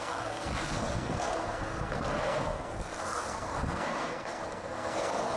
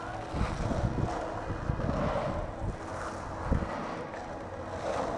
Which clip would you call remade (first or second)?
first